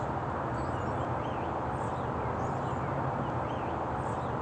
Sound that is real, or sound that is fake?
real